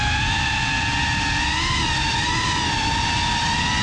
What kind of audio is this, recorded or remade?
recorded